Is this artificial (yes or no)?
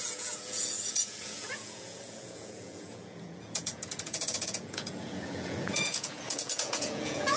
yes